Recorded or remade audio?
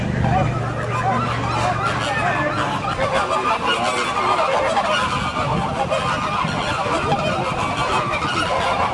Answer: recorded